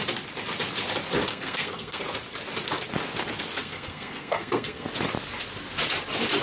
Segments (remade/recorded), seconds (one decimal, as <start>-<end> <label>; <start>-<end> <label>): 0.0-1.3 recorded; 1.3-2.0 remade; 2.0-3.6 recorded; 3.6-4.9 remade; 4.9-6.4 recorded